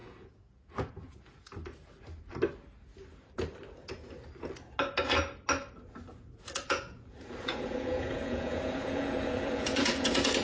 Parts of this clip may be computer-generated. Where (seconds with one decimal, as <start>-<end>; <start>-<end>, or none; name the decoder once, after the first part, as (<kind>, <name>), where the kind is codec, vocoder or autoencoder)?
0.0-1.5 (vocoder, Vocos); 6.1-10.4